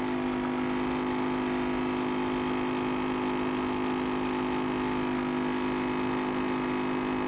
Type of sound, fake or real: real